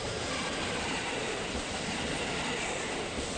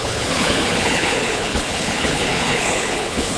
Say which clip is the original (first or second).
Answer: first